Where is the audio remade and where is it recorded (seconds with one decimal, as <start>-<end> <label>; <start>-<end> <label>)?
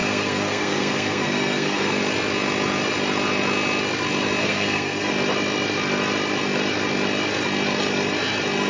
0.0-2.0 remade; 2.0-4.4 recorded; 4.4-5.1 remade; 5.1-8.7 recorded